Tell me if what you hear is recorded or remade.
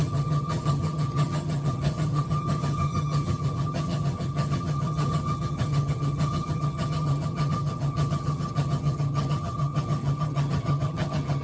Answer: remade